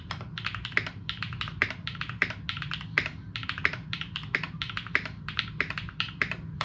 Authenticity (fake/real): fake